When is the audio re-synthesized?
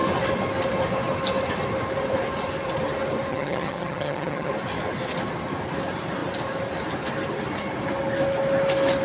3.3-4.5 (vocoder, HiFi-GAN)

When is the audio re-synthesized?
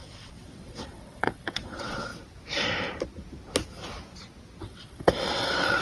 0.0-2.1 (vocoder, WaveNeXt); 4.6-5.8